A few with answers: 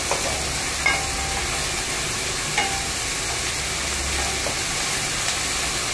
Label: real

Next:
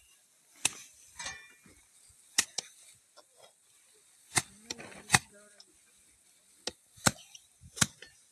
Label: real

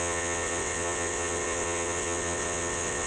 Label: fake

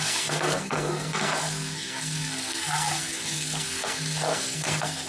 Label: fake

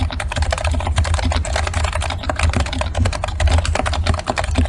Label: real